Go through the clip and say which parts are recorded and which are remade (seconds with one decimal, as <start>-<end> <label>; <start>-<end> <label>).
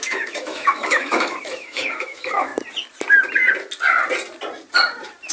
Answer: 0.0-2.5 remade; 2.5-5.3 recorded